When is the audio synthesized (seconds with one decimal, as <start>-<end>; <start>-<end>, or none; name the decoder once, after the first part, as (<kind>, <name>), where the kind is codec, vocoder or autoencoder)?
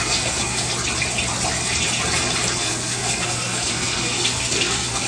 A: 0.0-0.7 (codec, SNAC); 2.6-5.1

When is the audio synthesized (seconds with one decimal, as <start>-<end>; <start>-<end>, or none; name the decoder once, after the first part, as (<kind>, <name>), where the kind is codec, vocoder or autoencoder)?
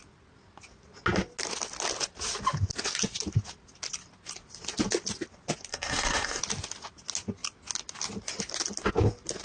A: 5.7-6.4 (codec, SNAC)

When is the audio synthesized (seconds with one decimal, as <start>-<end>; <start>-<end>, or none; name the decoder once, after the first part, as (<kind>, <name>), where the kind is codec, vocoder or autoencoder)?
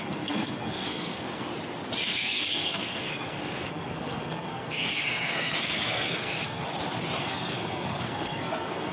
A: 0.0-1.5 (codec, SNAC); 2.0-6.6; 7.2-8.9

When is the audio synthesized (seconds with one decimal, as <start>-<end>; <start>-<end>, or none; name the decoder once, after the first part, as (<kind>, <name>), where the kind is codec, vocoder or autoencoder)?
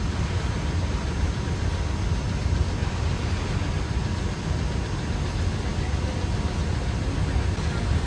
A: none